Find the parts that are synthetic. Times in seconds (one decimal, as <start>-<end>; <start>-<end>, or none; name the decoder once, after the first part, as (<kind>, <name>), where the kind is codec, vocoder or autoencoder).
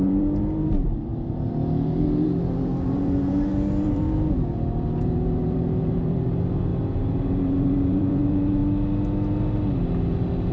0.0-8.6 (vocoder, BigVGAN v2)